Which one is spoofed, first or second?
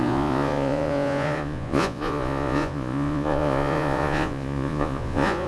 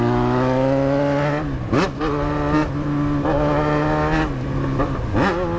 first